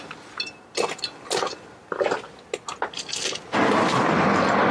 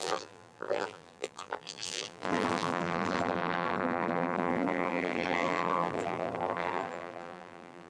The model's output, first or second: second